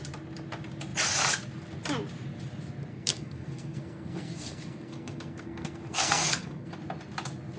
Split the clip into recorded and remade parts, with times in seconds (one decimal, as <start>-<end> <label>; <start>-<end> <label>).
0.0-2.9 recorded; 2.9-6.7 remade; 6.7-7.6 recorded